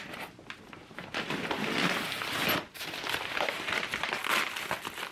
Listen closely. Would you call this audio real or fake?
real